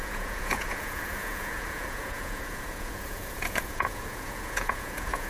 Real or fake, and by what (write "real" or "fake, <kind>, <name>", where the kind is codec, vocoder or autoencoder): fake, vocoder, Vocos